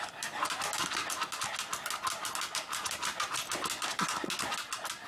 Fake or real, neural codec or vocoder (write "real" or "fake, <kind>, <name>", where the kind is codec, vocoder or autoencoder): real